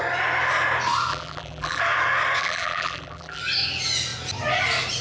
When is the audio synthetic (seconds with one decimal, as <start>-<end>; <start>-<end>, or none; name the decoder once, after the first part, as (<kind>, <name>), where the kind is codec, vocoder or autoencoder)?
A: 1.1-1.8 (vocoder, BigVGAN v2); 2.4-3.4